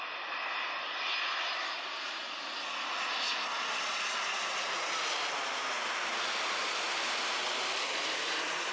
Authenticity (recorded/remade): recorded